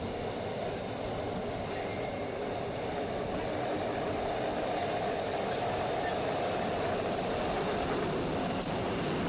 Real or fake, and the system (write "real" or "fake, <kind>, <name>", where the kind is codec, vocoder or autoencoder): real